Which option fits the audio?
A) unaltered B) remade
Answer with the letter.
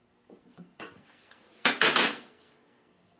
B